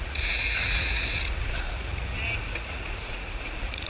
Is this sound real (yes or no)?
no